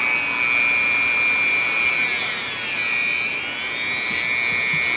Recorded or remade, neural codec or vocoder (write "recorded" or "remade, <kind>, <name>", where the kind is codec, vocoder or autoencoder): recorded